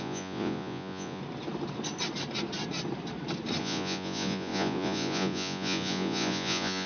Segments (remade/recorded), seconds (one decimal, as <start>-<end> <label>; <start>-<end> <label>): 0.0-1.2 remade; 1.2-3.6 recorded; 3.6-6.9 remade